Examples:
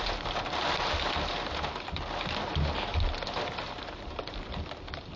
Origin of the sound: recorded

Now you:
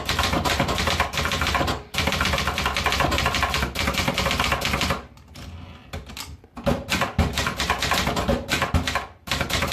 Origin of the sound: recorded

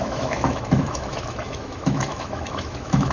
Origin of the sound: remade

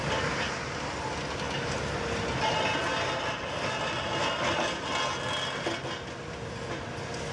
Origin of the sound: recorded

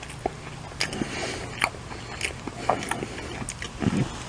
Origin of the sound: recorded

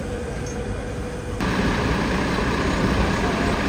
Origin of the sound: recorded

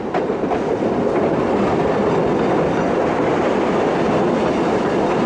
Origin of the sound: recorded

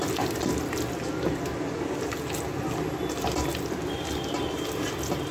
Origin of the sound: recorded